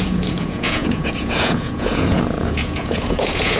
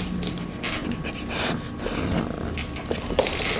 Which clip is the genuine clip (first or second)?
second